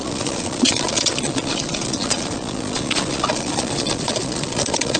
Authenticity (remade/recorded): remade